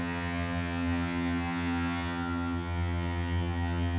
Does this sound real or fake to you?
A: fake